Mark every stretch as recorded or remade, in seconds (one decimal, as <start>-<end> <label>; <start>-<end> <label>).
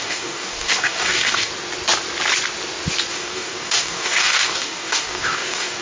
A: 0.0-1.5 remade; 1.5-3.1 recorded; 3.1-5.8 remade